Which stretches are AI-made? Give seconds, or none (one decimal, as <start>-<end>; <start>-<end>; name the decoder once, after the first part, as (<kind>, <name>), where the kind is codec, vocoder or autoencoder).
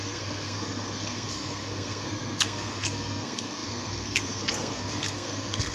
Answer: 0.0-5.7 (codec, SNAC)